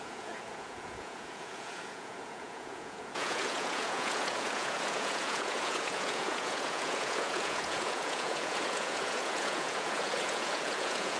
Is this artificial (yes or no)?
yes